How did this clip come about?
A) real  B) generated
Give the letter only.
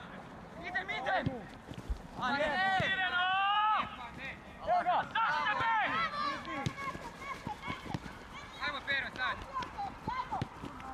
B